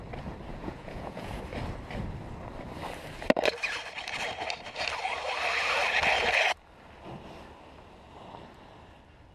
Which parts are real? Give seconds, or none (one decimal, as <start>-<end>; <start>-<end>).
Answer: 0.0-0.5; 1.4-9.3